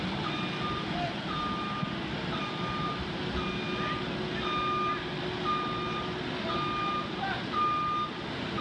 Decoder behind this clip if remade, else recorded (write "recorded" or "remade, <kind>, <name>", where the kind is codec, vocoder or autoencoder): recorded